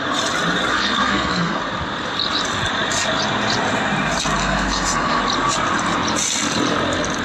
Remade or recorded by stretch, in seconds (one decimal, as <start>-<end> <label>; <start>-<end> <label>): 0.0-0.7 recorded; 0.7-1.6 remade; 1.6-4.4 recorded; 4.4-5.2 remade; 5.2-7.2 recorded